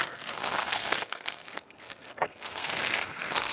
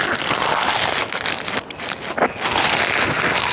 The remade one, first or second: first